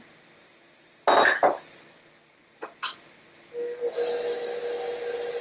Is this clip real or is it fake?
real